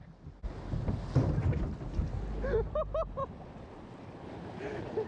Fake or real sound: real